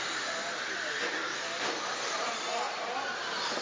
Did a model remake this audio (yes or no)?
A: no